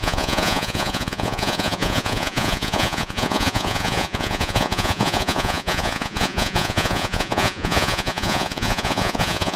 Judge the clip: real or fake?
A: fake